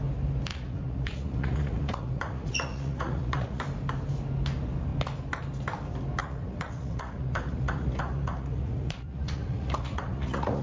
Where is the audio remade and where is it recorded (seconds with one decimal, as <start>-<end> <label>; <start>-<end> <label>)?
0.0-0.5 recorded; 0.5-3.6 remade; 3.6-6.2 recorded; 6.2-10.6 remade